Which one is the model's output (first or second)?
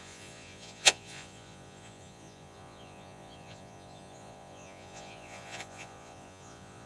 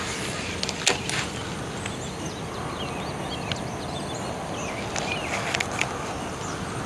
first